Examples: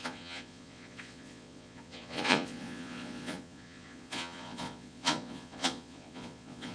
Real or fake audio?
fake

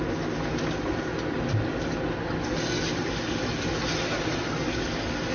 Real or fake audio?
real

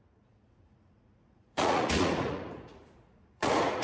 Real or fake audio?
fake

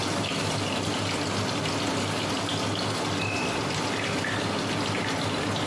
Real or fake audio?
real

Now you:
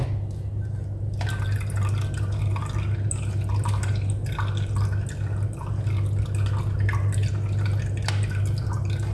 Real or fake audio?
real